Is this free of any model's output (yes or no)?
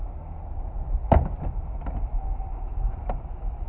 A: yes